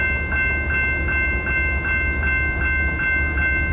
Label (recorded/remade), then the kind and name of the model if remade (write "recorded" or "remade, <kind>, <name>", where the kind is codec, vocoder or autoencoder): recorded